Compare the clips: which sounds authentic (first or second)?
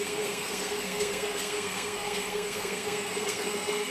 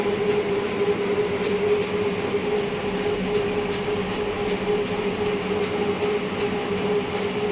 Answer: second